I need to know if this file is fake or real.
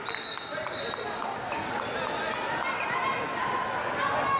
real